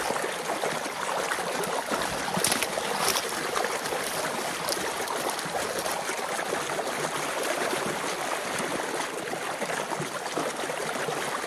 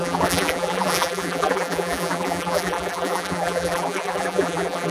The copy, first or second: second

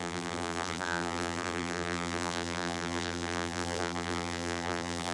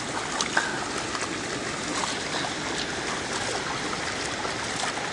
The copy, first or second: first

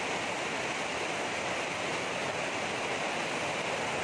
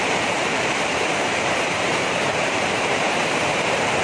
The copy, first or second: second